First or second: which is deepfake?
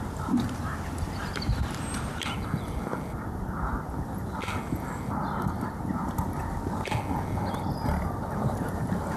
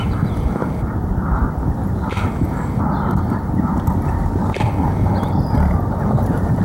second